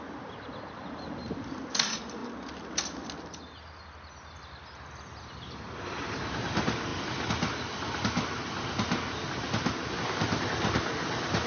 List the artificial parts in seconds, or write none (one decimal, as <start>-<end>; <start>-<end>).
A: none